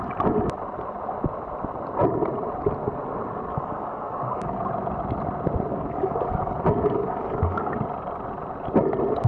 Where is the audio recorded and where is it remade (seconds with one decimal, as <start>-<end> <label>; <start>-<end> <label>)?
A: 0.0-3.5 recorded; 3.5-4.6 remade; 4.6-5.7 recorded; 5.7-7.7 remade; 7.7-9.3 recorded